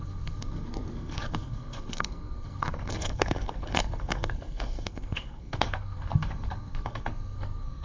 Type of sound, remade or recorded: remade